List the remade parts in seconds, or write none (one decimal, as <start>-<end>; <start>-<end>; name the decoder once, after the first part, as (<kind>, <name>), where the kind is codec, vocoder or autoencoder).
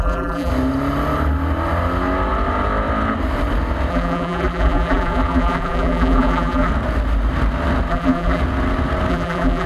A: 0.0-0.5 (vocoder, BigVGAN v2); 3.9-6.7; 7.9-8.4; 9.1-9.7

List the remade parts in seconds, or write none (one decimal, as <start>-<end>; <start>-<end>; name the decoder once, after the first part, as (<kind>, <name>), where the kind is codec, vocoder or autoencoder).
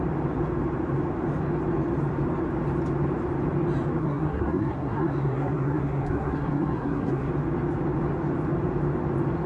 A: 4.0-7.3 (codec, SNAC)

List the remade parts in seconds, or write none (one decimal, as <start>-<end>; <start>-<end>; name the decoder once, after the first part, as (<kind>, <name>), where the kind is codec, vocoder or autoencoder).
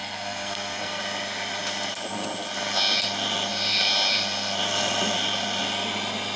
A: 0.0-1.0 (codec, SNAC)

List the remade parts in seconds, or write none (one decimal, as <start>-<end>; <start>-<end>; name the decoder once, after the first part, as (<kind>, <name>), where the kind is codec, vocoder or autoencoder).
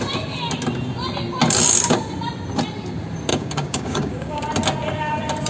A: 3.3-4.4 (codec, DAC)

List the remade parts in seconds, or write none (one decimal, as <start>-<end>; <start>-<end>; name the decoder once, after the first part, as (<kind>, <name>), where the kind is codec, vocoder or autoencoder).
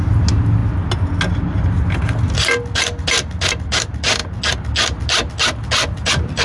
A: none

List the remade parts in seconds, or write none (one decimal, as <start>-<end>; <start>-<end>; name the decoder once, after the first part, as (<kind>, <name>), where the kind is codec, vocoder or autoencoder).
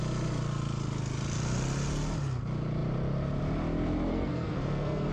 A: 4.1-5.1 (codec, SNAC)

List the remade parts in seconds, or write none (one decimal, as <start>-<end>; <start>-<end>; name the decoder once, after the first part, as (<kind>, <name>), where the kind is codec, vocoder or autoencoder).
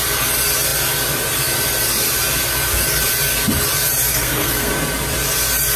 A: 4.1-4.7 (codec, SNAC)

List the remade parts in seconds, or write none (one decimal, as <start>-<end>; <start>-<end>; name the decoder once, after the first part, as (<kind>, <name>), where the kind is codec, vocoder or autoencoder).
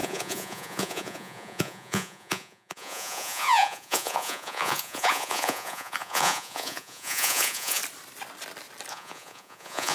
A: 0.0-7.8 (vocoder, Vocos); 8.9-9.9